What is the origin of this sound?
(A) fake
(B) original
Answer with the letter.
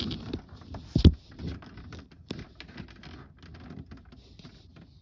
B